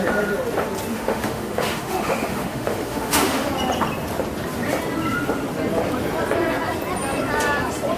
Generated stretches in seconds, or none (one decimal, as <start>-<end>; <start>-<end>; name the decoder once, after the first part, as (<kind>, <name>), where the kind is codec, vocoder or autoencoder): 0.9-3.5 (autoencoder, DAC-VAE)